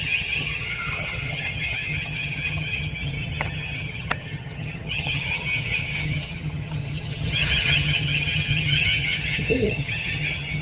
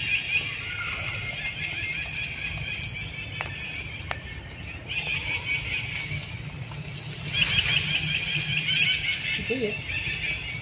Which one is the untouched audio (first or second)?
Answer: second